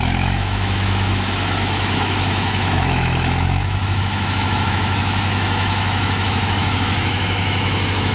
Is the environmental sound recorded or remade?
remade